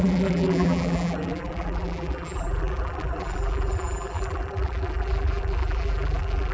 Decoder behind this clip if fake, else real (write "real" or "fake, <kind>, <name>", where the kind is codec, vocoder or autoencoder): fake, vocoder, BigVGAN v2